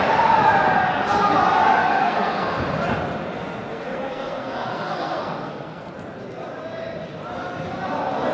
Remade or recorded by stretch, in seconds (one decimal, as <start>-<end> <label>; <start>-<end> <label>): 0.0-1.8 recorded; 1.8-2.6 remade; 2.6-3.7 recorded; 3.7-5.9 remade; 5.9-8.3 recorded